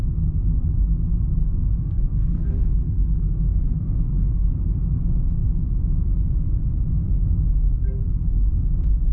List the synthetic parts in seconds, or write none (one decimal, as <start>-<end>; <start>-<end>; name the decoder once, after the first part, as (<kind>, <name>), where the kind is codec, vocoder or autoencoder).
1.4-4.5 (codec, SNAC)